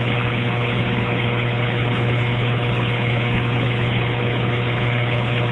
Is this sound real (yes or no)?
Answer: no